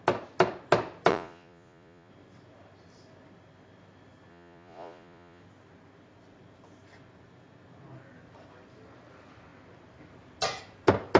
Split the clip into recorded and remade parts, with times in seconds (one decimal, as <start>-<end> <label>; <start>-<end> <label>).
0.0-1.1 recorded; 1.1-2.1 remade; 2.1-4.3 recorded; 4.3-5.4 remade; 5.4-11.2 recorded

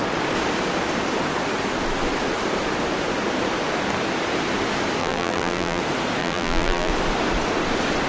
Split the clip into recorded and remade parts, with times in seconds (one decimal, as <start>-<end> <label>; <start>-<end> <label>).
0.0-5.0 recorded; 5.0-5.8 remade; 5.8-6.2 recorded; 6.2-6.9 remade; 6.9-8.1 recorded

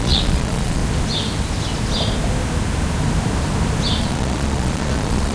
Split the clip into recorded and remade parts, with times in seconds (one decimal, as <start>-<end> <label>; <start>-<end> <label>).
0.0-0.8 remade; 0.8-4.0 recorded; 4.0-5.3 remade

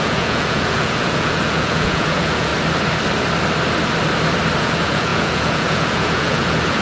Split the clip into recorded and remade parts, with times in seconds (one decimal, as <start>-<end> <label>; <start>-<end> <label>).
0.0-2.5 remade; 2.5-4.6 recorded; 4.6-6.8 remade

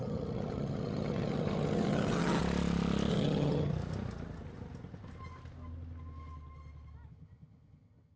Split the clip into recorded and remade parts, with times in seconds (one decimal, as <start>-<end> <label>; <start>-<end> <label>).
0.0-2.4 remade; 2.4-3.1 recorded; 3.1-3.7 remade; 3.7-7.1 recorded; 7.1-8.2 remade